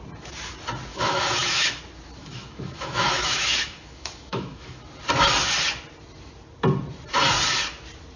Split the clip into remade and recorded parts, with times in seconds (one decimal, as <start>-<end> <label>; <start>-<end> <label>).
0.0-0.9 recorded; 0.9-1.8 remade; 1.8-2.2 recorded; 2.2-4.8 remade; 4.8-8.2 recorded